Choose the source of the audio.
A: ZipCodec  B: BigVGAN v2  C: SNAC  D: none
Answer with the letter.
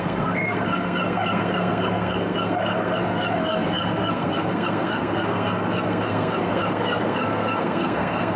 C